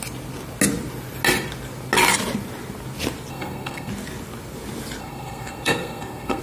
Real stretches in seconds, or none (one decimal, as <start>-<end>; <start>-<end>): 0.0-3.3; 3.9-5.0